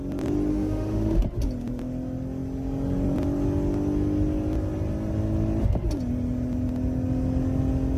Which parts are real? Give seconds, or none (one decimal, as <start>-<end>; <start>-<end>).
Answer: 0.0-0.5; 1.2-8.0